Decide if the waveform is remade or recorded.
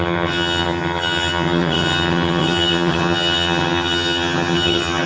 remade